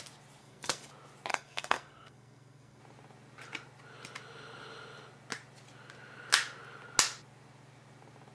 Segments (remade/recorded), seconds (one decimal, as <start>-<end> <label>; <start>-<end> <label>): 0.0-0.4 recorded; 0.4-0.9 remade; 0.9-1.3 recorded; 1.3-2.8 remade; 2.8-8.3 recorded